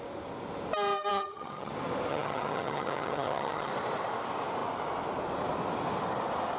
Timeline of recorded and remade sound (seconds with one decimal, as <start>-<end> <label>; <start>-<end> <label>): 0.0-1.1 recorded; 1.1-1.7 remade; 1.7-2.1 recorded; 2.1-3.7 remade; 3.7-6.6 recorded